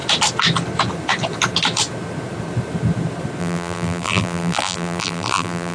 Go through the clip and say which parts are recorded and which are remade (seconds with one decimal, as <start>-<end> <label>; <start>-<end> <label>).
0.0-3.4 recorded; 3.4-5.7 remade